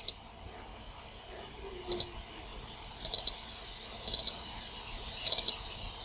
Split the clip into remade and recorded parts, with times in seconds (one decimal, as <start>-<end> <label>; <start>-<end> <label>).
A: 0.0-0.7 recorded; 0.7-1.2 remade; 1.2-6.0 recorded